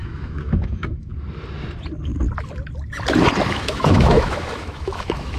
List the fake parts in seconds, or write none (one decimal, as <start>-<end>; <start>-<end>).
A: 0.0-1.1; 3.5-5.4

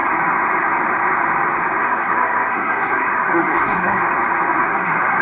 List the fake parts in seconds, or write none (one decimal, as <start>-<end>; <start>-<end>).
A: 1.8-4.1; 4.6-5.2

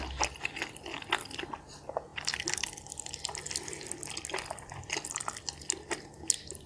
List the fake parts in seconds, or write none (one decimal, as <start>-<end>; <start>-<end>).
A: none

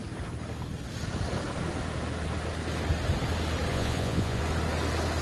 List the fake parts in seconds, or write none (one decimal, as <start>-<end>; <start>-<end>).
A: 3.7-4.4

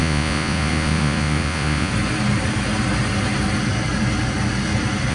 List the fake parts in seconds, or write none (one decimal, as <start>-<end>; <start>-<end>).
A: 0.0-1.9

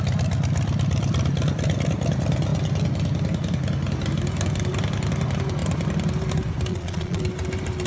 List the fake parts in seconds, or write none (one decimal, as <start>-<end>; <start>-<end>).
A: 6.7-7.2